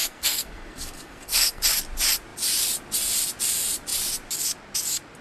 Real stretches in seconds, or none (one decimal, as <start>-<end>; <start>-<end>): 1.6-5.2